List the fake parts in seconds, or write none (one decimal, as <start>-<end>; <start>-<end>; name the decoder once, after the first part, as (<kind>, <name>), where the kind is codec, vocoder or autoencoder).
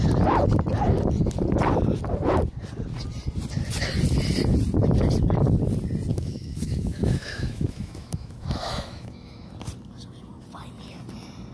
6.1-9.5 (autoencoder, DAC-VAE)